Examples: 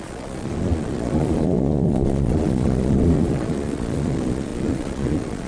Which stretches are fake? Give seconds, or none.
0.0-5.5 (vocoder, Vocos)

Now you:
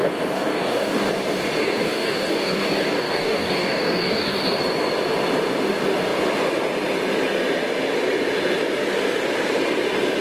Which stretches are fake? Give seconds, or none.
0.0-1.1 (codec, DAC); 1.6-4.6

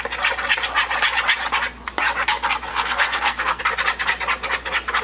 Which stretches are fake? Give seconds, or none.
2.7-3.6 (codec, SNAC)

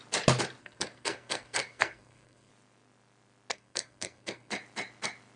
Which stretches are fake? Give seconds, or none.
0.6-2.5 (codec, SNAC); 3.5-4.5